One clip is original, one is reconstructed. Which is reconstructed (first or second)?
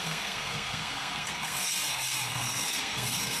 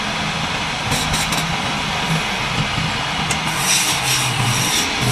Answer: first